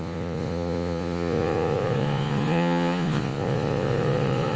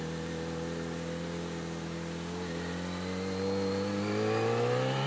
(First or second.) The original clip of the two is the second